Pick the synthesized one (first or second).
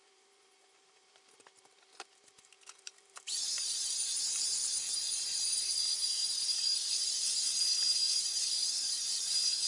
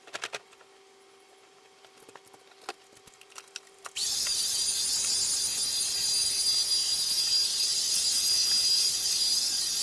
first